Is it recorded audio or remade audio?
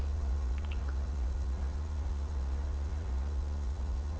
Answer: remade